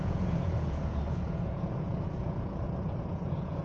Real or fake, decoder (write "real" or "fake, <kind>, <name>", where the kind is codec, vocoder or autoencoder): fake, vocoder, Vocos